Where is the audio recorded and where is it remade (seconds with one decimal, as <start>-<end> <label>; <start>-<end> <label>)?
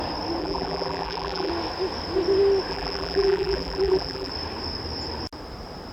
0.0-0.4 recorded; 0.4-1.5 remade; 1.5-2.7 recorded; 2.7-4.3 remade; 4.3-5.9 recorded